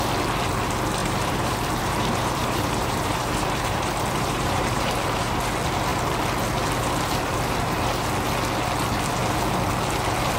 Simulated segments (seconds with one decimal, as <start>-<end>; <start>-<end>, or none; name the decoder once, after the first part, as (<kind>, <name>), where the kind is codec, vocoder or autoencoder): 1.0-5.4 (vocoder, BigVGAN v2)